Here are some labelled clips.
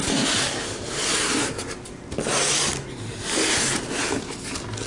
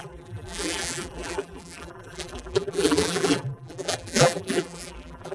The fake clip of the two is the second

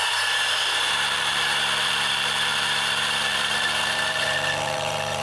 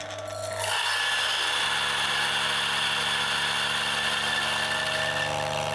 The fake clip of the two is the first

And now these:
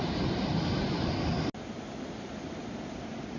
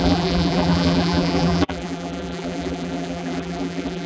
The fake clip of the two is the second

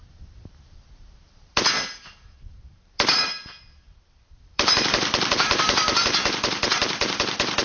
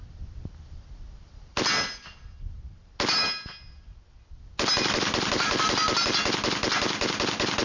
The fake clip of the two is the first